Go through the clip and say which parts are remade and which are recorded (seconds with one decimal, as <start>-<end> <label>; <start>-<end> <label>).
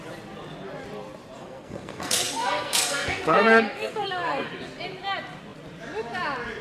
0.0-1.4 recorded; 1.4-4.5 remade; 4.5-6.6 recorded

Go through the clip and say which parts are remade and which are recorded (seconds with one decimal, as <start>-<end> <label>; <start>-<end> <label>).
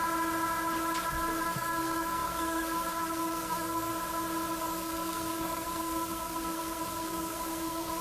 0.0-1.4 recorded; 1.4-3.9 remade; 3.9-4.6 recorded; 4.6-8.0 remade